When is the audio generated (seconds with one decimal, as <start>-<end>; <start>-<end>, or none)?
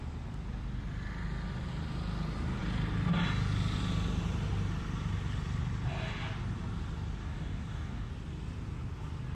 7.2-8.1